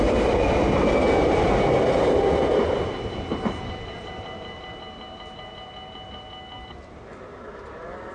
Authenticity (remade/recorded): recorded